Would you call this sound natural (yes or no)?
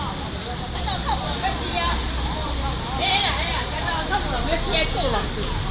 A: yes